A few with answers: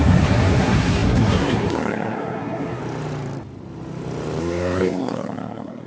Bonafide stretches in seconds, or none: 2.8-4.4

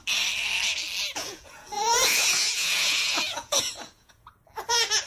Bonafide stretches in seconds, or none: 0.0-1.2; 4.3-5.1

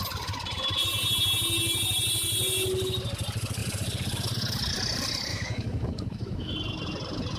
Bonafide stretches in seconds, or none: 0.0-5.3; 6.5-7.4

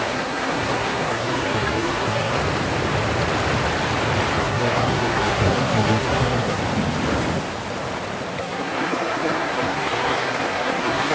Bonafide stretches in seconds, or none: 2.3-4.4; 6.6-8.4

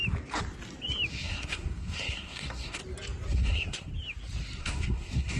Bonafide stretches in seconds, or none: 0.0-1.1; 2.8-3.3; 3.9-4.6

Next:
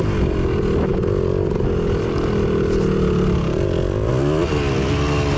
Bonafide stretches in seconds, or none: 0.0-5.4